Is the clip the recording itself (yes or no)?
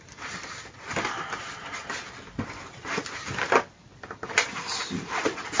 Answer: yes